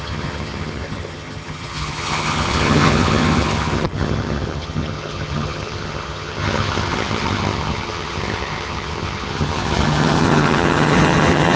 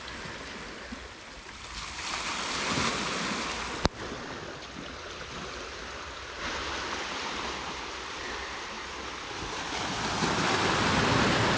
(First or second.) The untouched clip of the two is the second